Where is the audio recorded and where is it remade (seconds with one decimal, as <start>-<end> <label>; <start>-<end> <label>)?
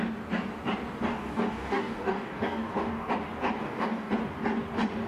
0.0-1.1 recorded; 1.1-3.1 remade; 3.1-3.6 recorded; 3.6-4.1 remade; 4.1-5.1 recorded